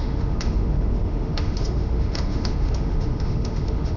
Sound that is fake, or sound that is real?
fake